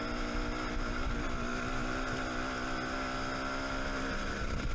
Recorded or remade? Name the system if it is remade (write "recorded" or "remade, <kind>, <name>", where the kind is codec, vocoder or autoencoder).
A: recorded